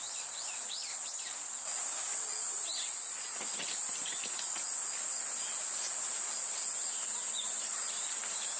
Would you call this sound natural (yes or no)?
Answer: yes